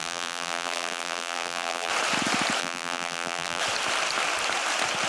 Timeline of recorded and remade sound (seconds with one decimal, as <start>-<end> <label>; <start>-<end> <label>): 0.0-1.9 remade; 1.9-2.6 recorded; 2.6-3.6 remade; 3.6-5.1 recorded